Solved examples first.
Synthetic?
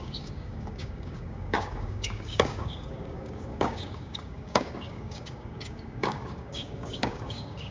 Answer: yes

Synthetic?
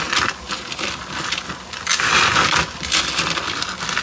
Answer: no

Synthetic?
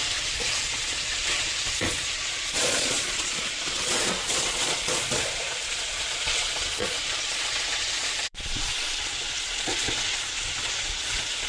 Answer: yes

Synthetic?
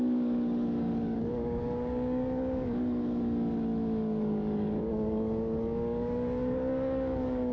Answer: yes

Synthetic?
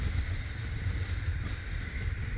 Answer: yes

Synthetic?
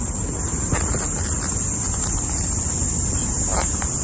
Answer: no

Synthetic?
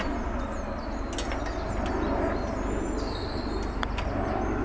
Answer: no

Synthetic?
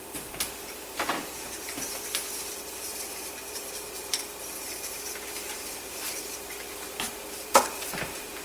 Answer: yes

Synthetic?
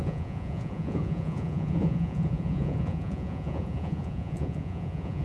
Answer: yes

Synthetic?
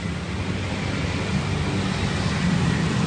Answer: no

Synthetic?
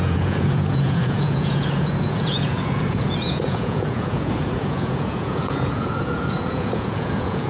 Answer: yes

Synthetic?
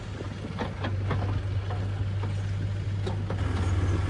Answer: no